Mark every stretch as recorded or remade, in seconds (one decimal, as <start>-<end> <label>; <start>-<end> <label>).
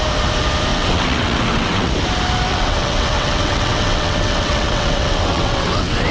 0.0-0.7 recorded; 0.7-1.9 remade; 1.9-2.5 recorded; 2.5-6.1 remade